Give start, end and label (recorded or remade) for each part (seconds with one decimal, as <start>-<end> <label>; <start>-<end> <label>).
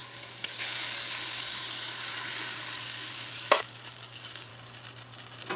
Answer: 0.0-4.5 remade; 4.5-5.6 recorded